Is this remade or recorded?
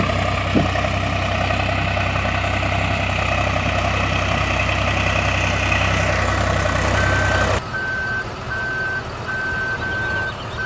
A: recorded